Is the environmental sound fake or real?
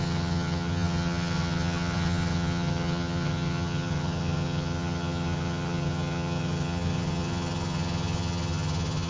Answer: fake